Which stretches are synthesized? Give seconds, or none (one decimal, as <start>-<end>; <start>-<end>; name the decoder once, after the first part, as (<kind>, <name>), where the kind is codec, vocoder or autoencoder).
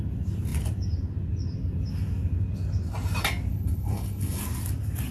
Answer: 3.5-4.4 (codec, HILCodec)